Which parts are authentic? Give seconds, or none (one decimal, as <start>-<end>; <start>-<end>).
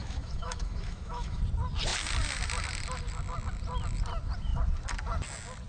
1.4-5.7